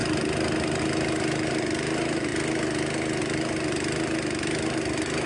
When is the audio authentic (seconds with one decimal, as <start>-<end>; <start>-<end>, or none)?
0.0-5.3